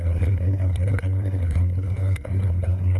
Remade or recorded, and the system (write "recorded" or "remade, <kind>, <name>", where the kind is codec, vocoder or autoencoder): remade, codec, SNAC